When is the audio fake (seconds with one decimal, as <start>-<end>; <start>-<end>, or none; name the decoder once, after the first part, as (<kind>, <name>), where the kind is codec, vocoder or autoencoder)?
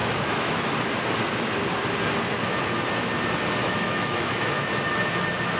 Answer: 0.0-0.7 (autoencoder, DAC-VAE); 3.6-4.7